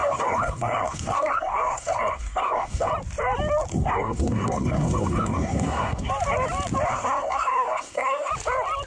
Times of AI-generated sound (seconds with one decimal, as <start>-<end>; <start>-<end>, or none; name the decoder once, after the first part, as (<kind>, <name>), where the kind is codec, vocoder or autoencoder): 0.0-2.9 (codec, SNAC); 3.7-6.1; 6.9-8.3